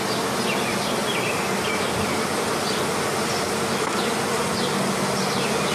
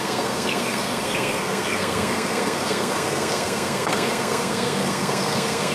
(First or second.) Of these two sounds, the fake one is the second